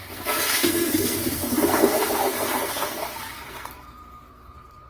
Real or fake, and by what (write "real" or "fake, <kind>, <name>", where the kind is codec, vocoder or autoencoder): fake, codec, SNAC